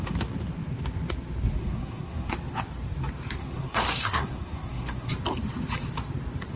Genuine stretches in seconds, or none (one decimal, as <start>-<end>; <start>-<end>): 0.0-1.6; 2.3-3.4; 5.1-6.6